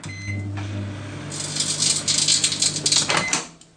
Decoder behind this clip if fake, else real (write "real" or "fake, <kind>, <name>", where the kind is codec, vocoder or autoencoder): real